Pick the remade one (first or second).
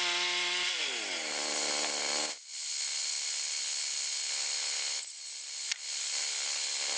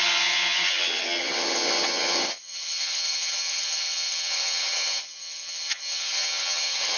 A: second